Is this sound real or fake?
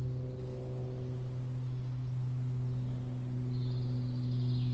real